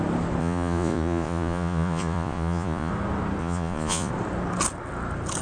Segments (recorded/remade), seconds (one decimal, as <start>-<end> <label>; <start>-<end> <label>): 0.0-0.4 recorded; 0.4-2.9 remade; 2.9-3.4 recorded; 3.4-4.1 remade; 4.1-5.4 recorded